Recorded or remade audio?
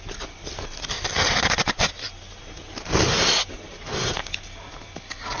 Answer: recorded